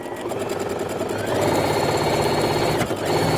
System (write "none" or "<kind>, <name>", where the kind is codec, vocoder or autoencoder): none